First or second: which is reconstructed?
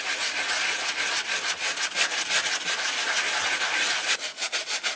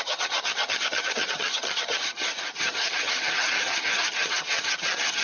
second